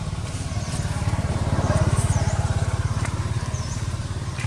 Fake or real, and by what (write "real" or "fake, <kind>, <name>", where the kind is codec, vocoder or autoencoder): fake, vocoder, BigVGAN v2